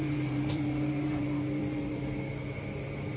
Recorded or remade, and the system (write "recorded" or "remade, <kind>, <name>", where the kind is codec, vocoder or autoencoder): remade, vocoder, BigVGAN v2